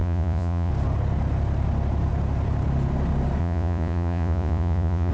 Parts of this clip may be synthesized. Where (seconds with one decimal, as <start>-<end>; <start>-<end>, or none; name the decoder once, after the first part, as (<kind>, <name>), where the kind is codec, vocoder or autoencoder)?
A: 0.0-0.7 (vocoder, Vocos); 3.4-5.1